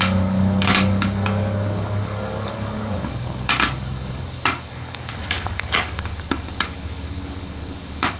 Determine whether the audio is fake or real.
fake